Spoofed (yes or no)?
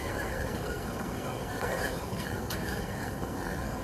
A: yes